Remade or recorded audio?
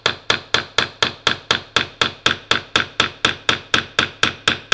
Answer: recorded